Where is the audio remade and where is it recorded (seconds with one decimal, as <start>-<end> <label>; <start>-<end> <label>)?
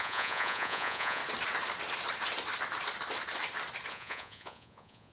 0.0-1.2 remade; 1.2-3.9 recorded; 3.9-5.1 remade